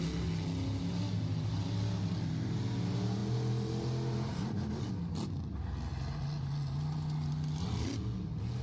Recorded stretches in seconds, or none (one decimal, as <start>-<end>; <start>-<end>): 0.0-8.6